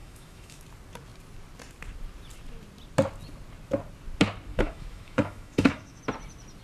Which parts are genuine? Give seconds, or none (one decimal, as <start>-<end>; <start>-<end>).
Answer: 0.6-4.5; 6.0-6.6